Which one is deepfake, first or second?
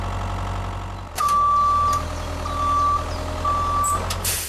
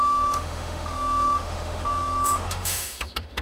second